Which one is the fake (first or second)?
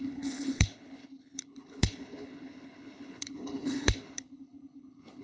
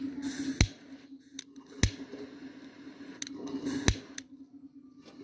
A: first